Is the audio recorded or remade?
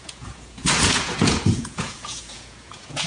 remade